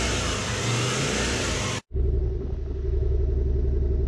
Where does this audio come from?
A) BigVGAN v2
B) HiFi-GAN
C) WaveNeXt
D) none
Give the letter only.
D